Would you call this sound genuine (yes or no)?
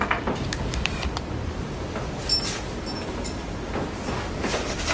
yes